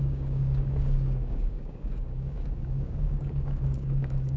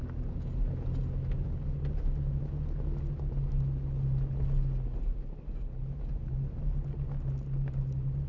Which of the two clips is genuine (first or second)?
second